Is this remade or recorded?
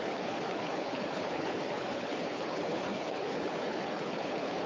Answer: remade